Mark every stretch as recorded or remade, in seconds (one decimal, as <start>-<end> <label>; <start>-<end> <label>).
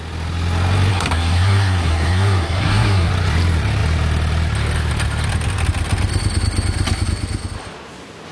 0.0-0.9 recorded; 0.9-3.1 remade; 3.1-8.3 recorded